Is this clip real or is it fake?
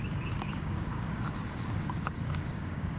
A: fake